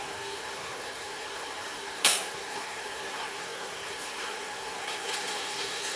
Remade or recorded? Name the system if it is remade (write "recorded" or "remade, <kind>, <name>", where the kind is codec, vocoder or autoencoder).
remade, codec, SNAC